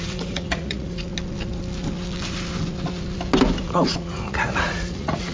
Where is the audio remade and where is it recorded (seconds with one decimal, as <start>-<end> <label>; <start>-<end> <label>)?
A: 0.0-1.1 remade; 1.1-3.6 recorded; 3.6-5.3 remade